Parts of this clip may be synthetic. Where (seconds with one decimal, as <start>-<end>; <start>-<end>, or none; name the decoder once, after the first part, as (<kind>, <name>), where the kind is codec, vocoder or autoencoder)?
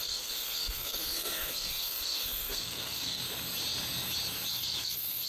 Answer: 0.0-3.2 (codec, SNAC); 4.5-5.3